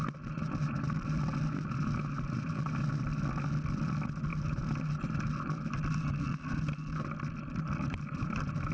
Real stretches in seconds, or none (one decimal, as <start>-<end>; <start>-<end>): 0.0-2.0; 3.0-4.3; 4.9-8.7